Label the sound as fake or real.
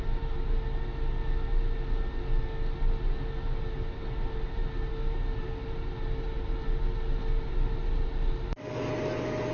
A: real